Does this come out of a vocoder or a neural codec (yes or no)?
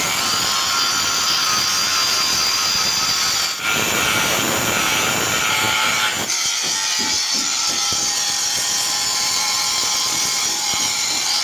no